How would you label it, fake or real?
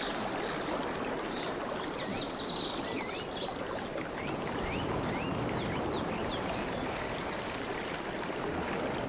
real